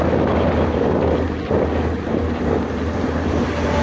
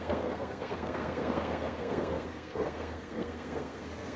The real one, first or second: first